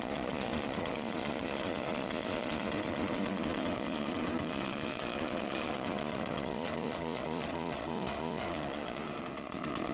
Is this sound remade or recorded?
remade